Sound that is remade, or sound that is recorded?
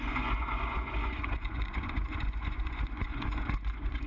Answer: remade